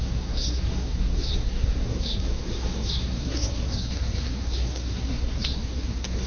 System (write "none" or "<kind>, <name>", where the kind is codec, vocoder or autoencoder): codec, SNAC